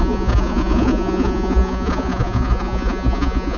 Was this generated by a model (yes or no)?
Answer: yes